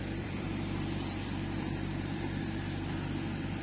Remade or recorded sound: remade